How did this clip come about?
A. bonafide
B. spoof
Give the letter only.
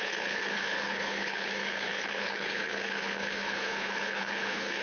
B